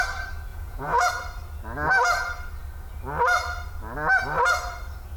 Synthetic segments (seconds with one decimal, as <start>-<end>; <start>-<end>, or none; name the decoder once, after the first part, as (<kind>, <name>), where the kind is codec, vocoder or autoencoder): 0.5-1.1 (vocoder, Vocos)